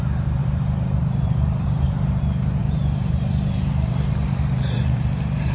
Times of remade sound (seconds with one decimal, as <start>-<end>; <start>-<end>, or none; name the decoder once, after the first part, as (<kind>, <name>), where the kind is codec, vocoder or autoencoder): 0.4-2.2 (vocoder, BigVGAN v2); 2.6-5.0